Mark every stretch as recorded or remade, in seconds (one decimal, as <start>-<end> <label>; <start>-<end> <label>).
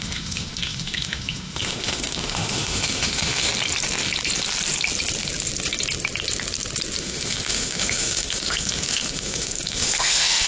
0.0-3.5 remade; 3.5-7.0 recorded; 7.0-10.5 remade